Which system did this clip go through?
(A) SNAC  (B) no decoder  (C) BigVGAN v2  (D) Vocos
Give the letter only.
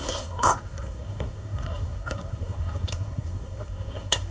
A